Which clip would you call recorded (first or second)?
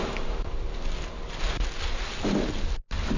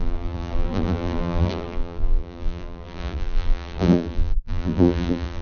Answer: first